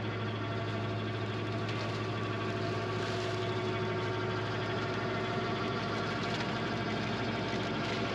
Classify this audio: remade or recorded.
recorded